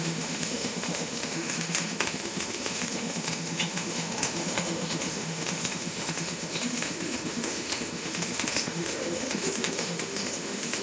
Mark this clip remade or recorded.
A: remade